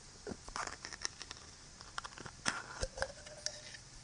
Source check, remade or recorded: recorded